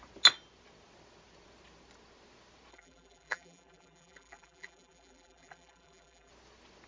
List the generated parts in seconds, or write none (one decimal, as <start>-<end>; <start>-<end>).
2.7-6.3